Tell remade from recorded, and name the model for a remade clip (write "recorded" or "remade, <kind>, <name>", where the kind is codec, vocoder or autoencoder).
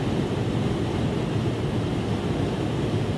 recorded